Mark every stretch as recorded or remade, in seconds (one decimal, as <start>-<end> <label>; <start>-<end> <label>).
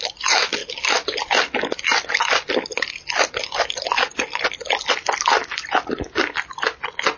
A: 0.0-7.2 recorded